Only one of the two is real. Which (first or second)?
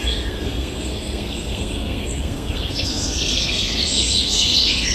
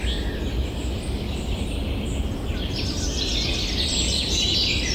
second